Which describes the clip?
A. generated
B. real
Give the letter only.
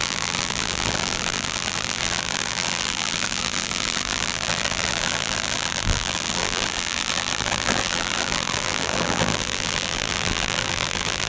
A